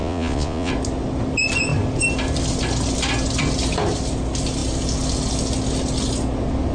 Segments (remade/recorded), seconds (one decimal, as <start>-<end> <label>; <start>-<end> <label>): 0.0-0.7 remade; 0.7-6.7 recorded